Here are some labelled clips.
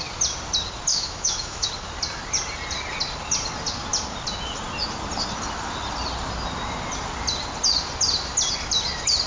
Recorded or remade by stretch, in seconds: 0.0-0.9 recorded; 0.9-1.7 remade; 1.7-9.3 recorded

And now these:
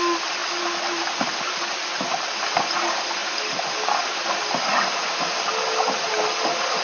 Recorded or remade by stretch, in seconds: 0.0-6.8 recorded

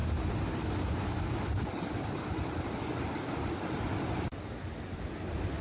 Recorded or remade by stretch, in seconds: 0.0-5.6 recorded

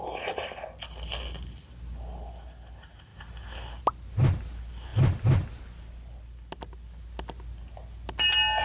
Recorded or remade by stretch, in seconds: 0.0-8.6 recorded